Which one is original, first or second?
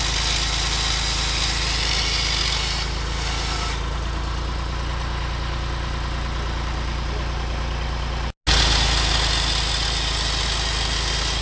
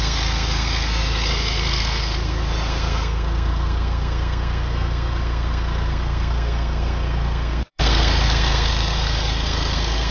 first